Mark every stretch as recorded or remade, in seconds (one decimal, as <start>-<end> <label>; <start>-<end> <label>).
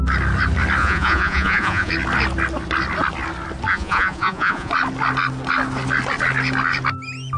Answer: 0.0-0.8 recorded; 0.8-1.9 remade; 1.9-3.7 recorded; 3.7-4.7 remade; 4.7-7.4 recorded